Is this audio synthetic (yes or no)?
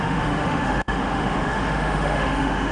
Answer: yes